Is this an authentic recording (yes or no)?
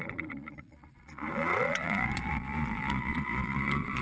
no